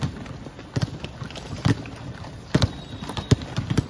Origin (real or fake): real